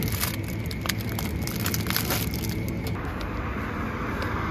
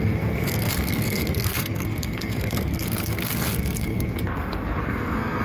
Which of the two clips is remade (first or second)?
second